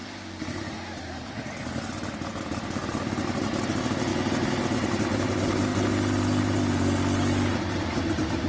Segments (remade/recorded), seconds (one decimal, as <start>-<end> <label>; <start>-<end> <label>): 0.0-8.5 recorded